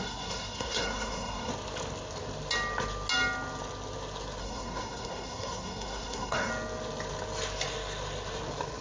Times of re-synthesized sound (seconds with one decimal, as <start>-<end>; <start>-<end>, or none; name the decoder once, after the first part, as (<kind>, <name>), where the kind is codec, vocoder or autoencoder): 0.0-1.5 (codec, SNAC); 4.4-6.5